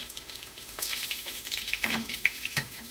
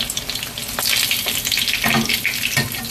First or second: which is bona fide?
second